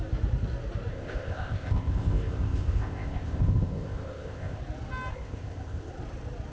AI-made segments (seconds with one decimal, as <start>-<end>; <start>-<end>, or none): 0.9-4.6; 5.1-5.9